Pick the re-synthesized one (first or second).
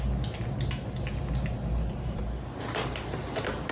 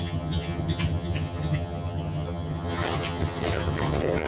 second